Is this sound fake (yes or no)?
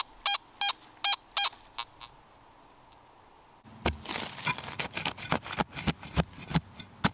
no